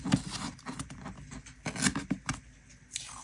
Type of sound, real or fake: real